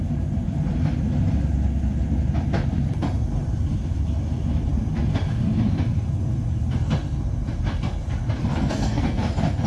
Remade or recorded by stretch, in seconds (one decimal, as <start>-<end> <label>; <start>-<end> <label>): 0.0-8.5 recorded; 8.5-9.2 remade; 9.2-9.7 recorded

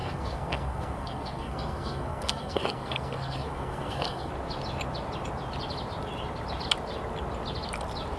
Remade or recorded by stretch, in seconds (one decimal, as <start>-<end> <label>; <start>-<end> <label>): 0.0-4.3 remade; 4.3-8.2 recorded

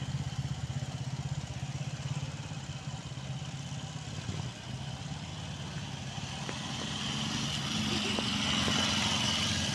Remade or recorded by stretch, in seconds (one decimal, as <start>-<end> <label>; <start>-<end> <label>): 0.0-9.7 recorded

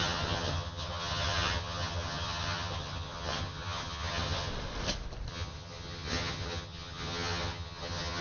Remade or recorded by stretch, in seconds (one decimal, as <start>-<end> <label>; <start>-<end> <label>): 0.0-4.5 remade; 4.5-5.3 recorded; 5.3-8.2 remade